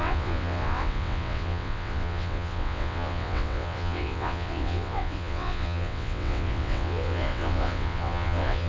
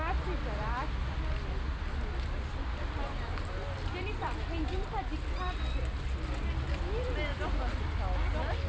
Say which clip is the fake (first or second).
first